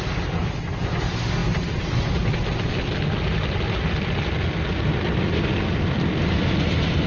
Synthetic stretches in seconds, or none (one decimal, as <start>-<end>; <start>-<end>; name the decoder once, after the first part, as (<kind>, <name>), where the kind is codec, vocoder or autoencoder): none